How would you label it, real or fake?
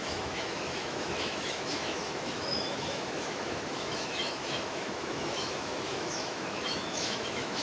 fake